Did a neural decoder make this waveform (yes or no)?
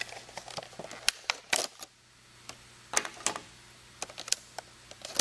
no